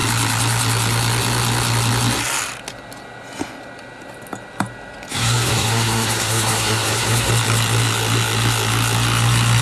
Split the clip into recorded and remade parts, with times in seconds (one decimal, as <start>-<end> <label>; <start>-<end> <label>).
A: 0.0-5.1 recorded; 5.1-7.3 remade; 7.3-9.6 recorded